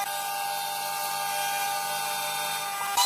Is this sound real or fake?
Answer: real